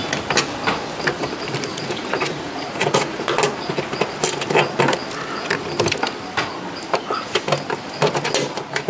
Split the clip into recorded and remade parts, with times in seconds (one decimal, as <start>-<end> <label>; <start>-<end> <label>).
0.0-1.7 recorded; 1.7-3.3 remade; 3.3-8.9 recorded